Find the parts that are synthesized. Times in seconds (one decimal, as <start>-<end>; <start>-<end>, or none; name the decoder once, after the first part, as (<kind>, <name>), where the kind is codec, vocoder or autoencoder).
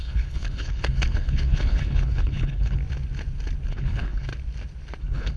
0.0-2.8 (codec, HILCodec); 3.7-4.3; 5.0-5.4